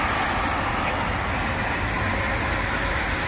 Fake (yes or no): no